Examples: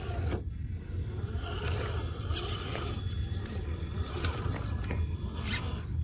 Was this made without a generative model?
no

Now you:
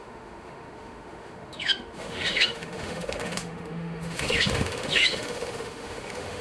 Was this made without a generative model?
no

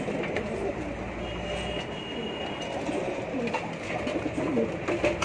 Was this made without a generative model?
yes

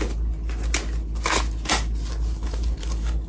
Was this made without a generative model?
yes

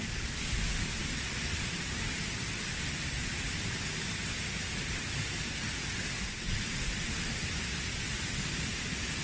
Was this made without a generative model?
yes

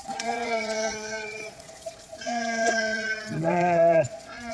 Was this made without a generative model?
no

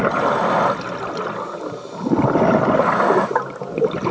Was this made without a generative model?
yes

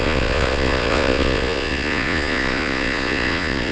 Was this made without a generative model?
no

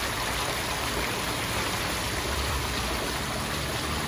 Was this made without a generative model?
yes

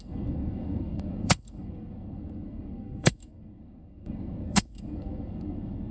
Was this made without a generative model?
no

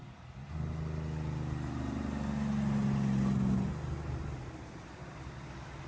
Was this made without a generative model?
yes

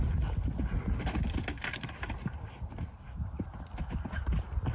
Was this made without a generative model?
yes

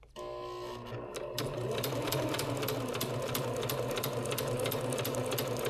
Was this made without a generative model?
yes